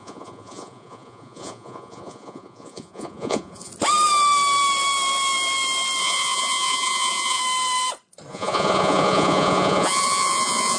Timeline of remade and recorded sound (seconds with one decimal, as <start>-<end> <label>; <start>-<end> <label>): 0.0-3.7 remade; 3.7-6.0 recorded; 6.0-7.4 remade; 7.4-8.3 recorded; 8.3-10.8 remade